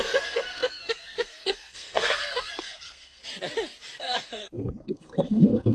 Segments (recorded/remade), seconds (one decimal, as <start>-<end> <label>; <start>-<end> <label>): 0.0-3.2 remade; 3.2-4.0 recorded; 4.0-5.7 remade